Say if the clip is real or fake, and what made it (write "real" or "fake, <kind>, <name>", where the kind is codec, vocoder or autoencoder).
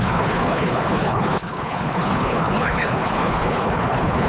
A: fake, codec, HILCodec